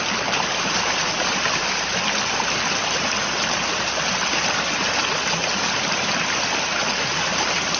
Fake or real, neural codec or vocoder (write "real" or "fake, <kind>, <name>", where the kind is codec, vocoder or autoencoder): real